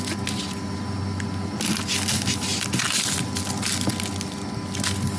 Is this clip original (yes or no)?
yes